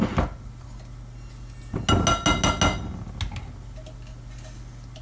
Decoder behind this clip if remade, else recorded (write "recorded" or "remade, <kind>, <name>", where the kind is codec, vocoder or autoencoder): recorded